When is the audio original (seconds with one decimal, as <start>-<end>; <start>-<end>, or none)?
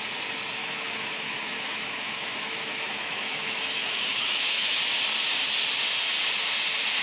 0.0-0.6; 4.8-7.0